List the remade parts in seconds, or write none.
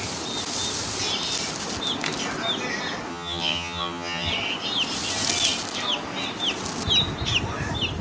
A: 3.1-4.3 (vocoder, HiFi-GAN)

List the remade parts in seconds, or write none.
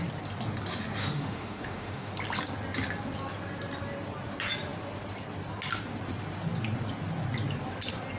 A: 1.0-2.1 (autoencoder, DAC-VAE)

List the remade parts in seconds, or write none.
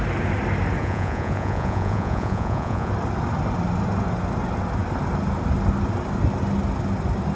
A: 0.8-2.9 (vocoder, Vocos)